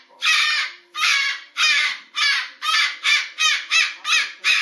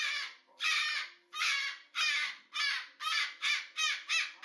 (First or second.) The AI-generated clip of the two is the first